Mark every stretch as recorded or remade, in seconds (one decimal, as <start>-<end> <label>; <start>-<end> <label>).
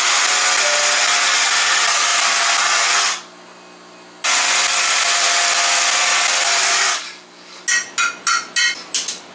0.0-6.9 recorded; 6.9-7.6 remade; 7.6-9.3 recorded